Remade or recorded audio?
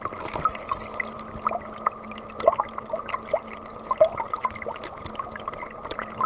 recorded